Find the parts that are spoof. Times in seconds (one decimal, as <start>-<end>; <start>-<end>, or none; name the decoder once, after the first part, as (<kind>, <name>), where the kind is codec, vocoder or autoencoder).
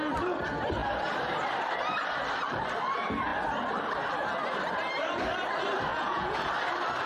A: 5.9-6.5 (vocoder, Vocos)